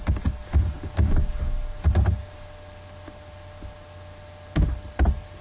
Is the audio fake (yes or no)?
no